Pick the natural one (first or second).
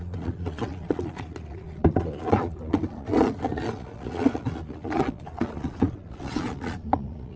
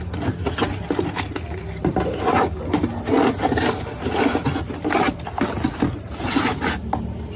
second